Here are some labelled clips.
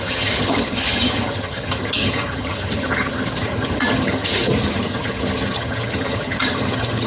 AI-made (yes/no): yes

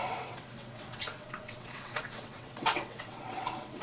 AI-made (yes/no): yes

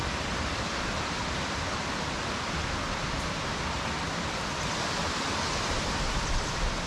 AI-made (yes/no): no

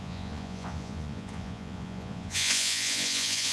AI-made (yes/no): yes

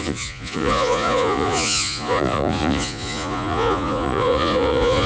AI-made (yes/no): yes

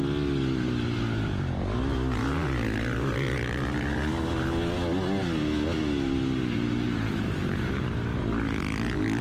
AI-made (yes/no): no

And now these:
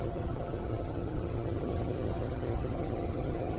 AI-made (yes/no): yes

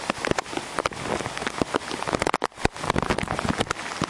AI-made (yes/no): no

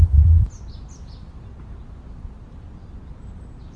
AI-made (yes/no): no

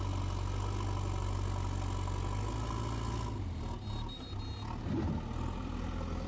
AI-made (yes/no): no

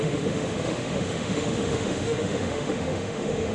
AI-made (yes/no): yes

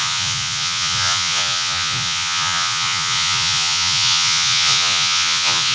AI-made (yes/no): yes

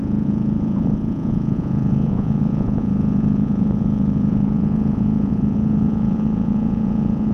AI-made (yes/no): yes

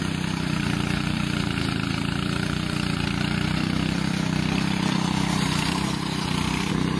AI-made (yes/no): yes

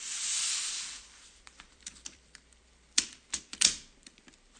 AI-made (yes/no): yes